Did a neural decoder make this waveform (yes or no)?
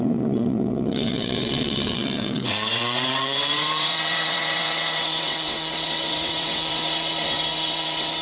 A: yes